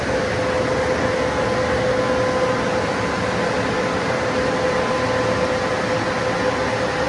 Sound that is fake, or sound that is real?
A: real